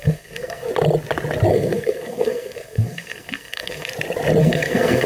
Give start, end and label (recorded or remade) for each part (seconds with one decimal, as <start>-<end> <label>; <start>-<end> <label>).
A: 0.0-0.7 remade; 0.7-1.5 recorded; 1.5-3.9 remade; 3.9-4.4 recorded; 4.4-5.1 remade